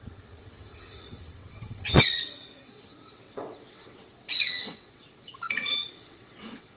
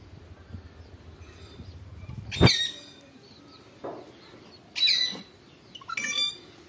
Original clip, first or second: second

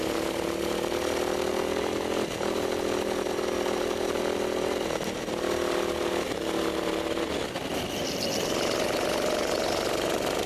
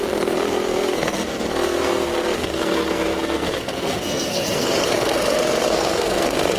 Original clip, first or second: first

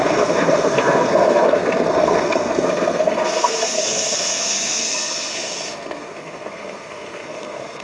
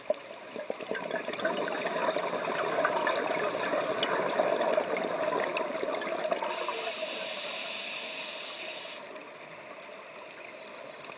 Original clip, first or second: second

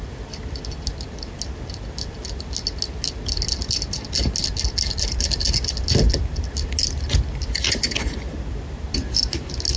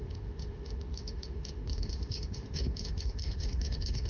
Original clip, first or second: first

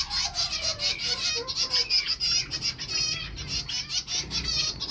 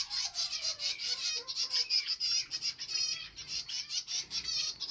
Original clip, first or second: first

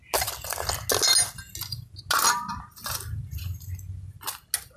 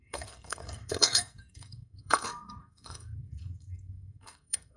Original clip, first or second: first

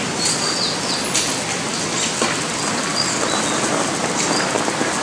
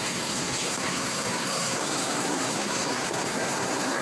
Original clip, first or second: first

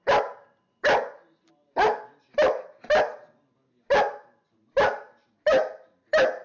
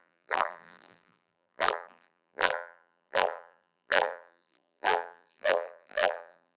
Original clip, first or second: first